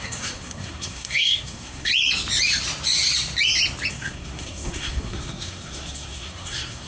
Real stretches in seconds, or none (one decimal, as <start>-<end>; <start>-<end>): 1.9-3.9